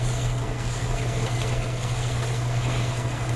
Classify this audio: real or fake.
fake